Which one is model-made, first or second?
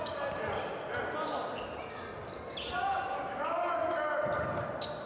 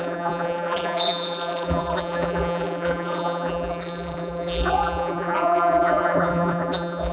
second